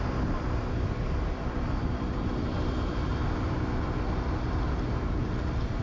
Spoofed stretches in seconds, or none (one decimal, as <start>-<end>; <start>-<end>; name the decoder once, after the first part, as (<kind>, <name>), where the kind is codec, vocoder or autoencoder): 0.0-3.1 (vocoder, BigVGAN v2)